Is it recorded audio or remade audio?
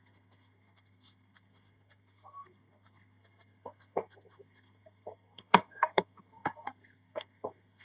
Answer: remade